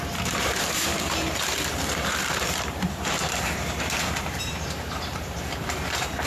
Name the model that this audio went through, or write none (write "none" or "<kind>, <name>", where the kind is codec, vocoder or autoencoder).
vocoder, BigVGAN v2